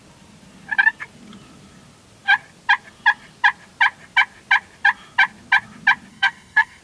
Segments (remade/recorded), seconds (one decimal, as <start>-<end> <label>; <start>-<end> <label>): 0.0-6.1 recorded; 6.1-6.8 remade